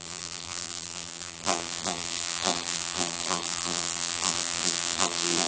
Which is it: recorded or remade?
remade